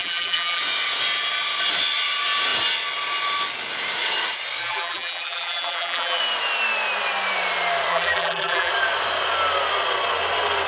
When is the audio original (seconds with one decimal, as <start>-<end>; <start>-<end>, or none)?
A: 0.6-4.6; 6.2-7.9; 8.7-10.7